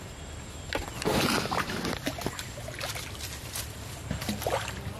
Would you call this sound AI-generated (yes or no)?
no